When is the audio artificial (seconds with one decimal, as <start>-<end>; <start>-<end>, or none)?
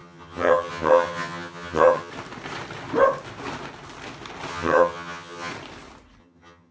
0.0-2.1; 4.5-5.5; 6.2-6.7